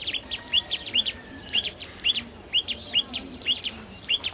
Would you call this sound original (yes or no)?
no